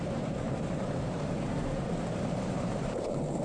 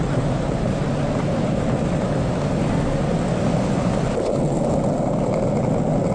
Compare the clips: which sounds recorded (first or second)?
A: second